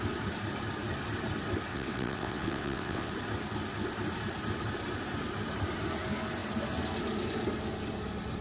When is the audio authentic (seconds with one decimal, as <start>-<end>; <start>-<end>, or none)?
0.0-1.7; 3.1-8.4